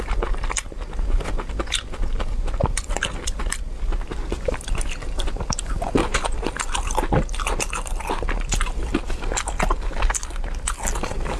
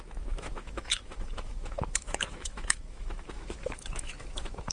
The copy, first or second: second